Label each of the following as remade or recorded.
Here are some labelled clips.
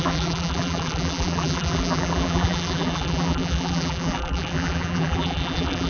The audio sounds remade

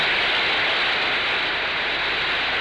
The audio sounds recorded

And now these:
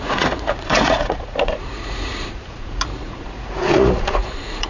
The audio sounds remade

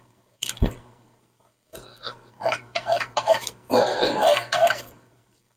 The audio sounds remade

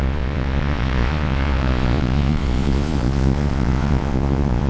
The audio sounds remade